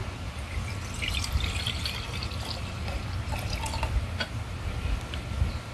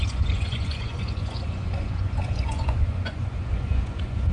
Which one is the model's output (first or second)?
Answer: second